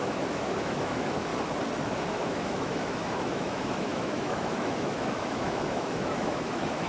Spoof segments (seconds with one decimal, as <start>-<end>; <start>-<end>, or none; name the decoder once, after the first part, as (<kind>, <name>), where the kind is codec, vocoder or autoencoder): 0.0-1.3 (autoencoder, DAC-VAE); 1.8-6.9